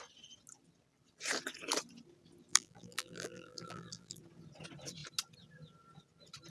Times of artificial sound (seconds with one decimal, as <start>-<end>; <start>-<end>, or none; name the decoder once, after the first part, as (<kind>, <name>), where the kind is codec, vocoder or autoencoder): 2.5-4.2 (vocoder, BigVGAN v2)